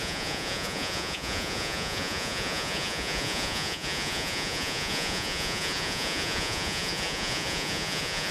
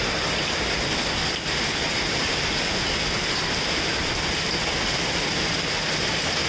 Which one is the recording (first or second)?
second